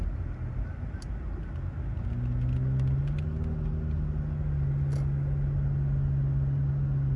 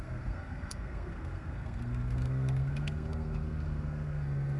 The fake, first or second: second